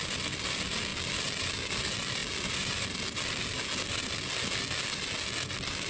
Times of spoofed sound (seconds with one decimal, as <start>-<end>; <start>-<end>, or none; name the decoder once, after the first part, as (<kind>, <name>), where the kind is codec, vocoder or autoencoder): none